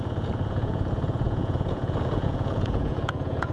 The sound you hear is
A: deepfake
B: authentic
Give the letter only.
A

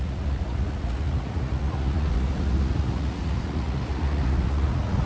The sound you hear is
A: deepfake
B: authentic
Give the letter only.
A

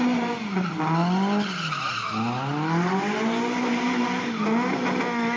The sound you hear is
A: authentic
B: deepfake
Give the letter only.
A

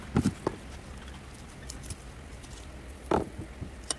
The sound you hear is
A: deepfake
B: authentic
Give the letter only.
B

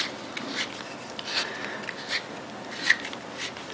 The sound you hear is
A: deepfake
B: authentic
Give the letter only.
B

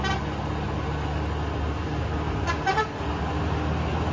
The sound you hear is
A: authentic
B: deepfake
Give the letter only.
A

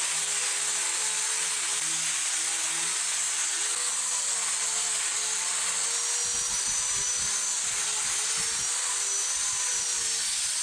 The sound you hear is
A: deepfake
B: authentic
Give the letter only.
B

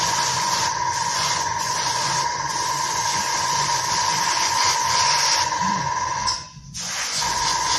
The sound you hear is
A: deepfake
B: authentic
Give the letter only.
A